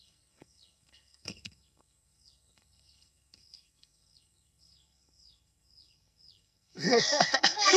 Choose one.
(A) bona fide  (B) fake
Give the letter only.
B